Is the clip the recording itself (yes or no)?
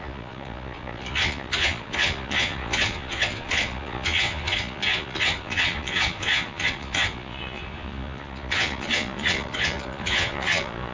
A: no